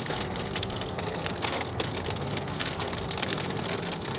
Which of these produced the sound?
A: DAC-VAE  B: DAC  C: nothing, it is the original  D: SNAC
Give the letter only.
D